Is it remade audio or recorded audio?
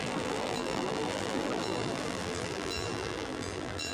remade